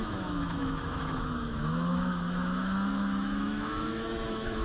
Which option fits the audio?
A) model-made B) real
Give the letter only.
A